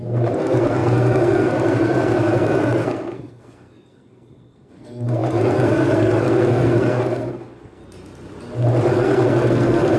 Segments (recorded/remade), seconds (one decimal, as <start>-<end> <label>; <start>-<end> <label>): 0.0-7.8 remade; 7.8-8.9 recorded; 8.9-10.0 remade